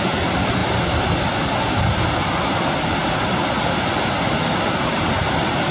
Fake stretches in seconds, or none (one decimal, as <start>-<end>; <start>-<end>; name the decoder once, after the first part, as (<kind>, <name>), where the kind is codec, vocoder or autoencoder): none